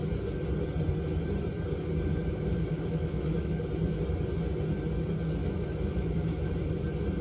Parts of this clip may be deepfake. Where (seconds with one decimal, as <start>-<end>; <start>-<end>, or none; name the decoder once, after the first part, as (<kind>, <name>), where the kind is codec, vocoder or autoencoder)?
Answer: 2.1-3.6 (autoencoder, DAC-VAE); 5.4-6.7